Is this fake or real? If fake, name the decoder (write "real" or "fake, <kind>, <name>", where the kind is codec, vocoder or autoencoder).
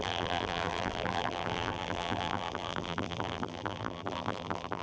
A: fake, vocoder, BigVGAN v2